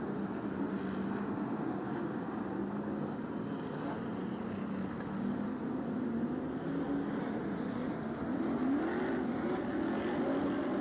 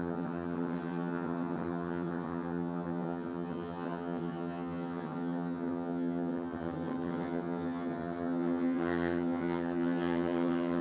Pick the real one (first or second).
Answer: first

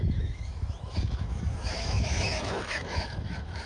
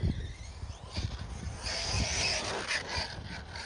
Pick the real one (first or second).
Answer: second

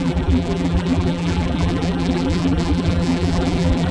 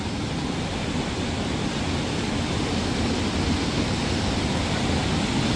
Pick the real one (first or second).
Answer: second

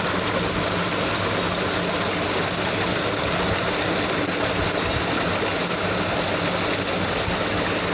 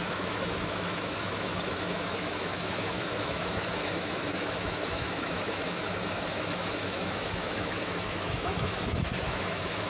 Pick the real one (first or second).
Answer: first